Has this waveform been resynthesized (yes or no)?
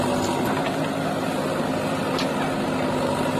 no